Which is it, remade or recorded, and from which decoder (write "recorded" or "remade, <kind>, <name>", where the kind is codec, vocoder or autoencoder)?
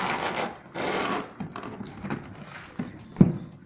recorded